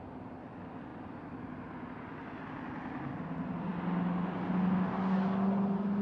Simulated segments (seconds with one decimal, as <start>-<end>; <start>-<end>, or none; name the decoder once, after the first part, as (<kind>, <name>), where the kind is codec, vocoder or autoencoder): none